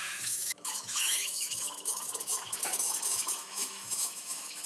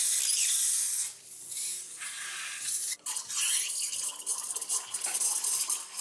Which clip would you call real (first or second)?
second